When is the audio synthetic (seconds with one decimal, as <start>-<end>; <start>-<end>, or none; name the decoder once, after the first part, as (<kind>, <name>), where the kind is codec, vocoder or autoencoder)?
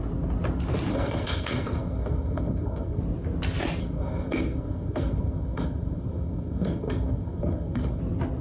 0.9-3.0 (codec, SNAC); 3.8-8.0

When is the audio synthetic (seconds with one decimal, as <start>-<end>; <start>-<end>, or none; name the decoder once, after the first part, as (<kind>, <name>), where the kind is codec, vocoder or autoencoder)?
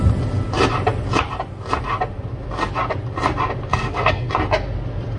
3.7-4.3 (codec, SNAC)